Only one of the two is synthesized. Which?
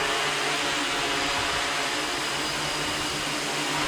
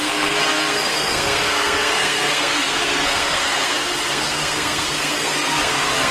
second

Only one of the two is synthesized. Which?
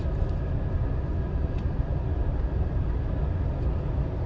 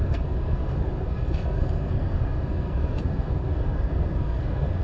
second